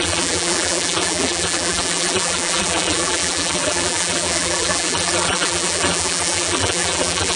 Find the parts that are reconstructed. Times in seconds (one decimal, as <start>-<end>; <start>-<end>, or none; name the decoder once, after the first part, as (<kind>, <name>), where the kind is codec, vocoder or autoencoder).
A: 0.0-7.4 (vocoder, BigVGAN v2)